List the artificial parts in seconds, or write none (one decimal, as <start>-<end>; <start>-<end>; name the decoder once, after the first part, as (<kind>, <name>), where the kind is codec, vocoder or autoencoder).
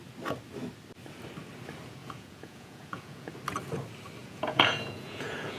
2.0-3.3 (vocoder, Vocos); 4.2-5.6